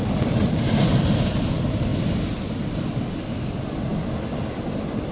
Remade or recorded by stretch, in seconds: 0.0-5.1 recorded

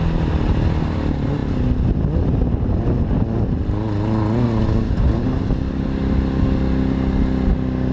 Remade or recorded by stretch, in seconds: 0.0-7.9 recorded

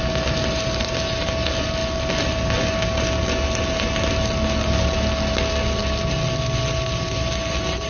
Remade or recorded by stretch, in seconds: 0.0-7.9 recorded

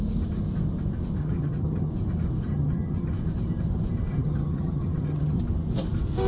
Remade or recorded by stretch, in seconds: 0.0-1.2 recorded; 1.2-1.9 remade; 1.9-2.5 recorded; 2.5-3.1 remade; 3.1-4.1 recorded; 4.1-5.4 remade; 5.4-6.3 recorded

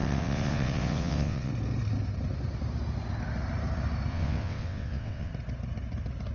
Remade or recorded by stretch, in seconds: 0.0-1.5 remade; 1.5-4.1 recorded; 4.1-5.3 remade; 5.3-6.3 recorded